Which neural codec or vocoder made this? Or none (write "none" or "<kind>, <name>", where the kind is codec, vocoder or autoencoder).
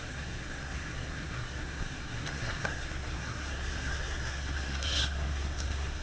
codec, SNAC